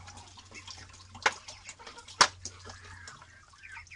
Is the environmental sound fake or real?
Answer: real